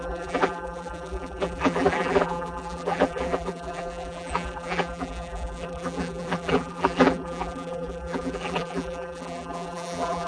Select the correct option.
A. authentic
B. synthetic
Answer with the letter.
B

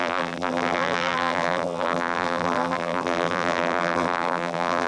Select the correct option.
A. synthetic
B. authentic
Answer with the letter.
A